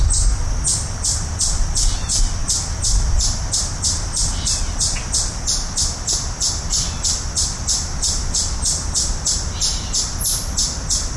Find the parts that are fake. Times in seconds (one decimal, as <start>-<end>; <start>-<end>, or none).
none